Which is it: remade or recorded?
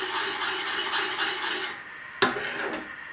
recorded